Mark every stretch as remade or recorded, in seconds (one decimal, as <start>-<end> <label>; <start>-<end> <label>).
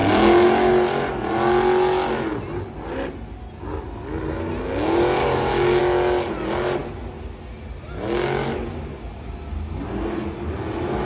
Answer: 0.0-5.2 recorded; 5.2-5.8 remade; 5.8-11.1 recorded